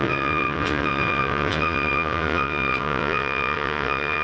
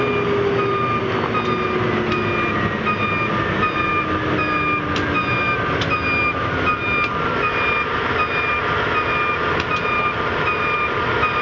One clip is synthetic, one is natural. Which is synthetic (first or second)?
first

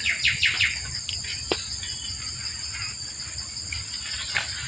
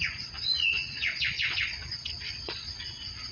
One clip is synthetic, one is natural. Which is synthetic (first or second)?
second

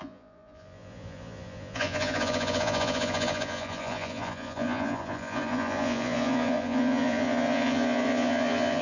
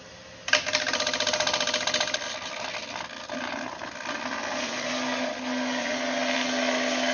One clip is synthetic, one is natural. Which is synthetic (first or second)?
first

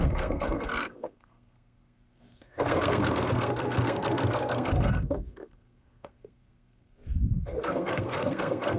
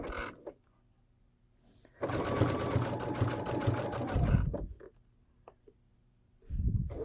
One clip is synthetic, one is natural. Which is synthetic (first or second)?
first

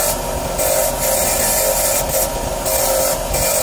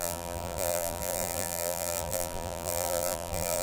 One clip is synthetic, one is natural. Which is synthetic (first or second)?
second